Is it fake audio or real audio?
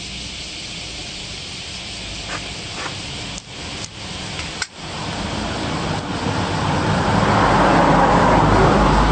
real